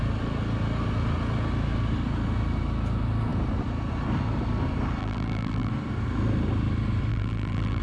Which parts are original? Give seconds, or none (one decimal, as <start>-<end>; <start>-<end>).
0.0-5.0; 5.7-7.1